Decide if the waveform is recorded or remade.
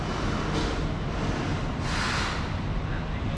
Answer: recorded